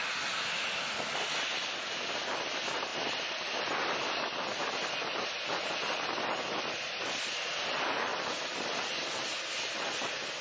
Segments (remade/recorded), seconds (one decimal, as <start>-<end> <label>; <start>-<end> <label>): 0.0-10.4 recorded